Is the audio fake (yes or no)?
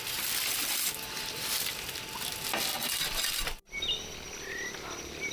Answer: no